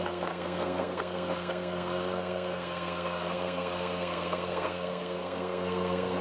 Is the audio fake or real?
fake